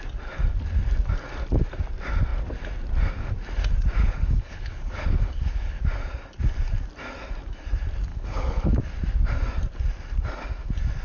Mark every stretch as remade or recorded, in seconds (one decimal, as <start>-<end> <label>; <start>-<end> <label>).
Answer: 0.0-4.0 recorded; 4.0-5.8 remade; 5.8-8.1 recorded; 8.1-8.8 remade; 8.8-11.0 recorded